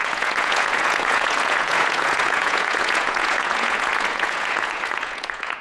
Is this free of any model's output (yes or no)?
no